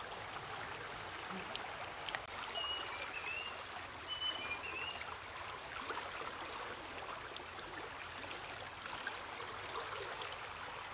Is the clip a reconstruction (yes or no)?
no